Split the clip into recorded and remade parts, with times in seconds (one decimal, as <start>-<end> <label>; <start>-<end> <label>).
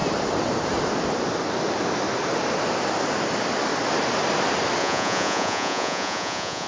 0.0-4.8 recorded; 4.8-6.7 remade